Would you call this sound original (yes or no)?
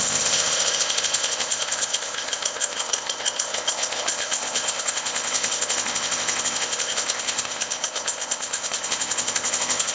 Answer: no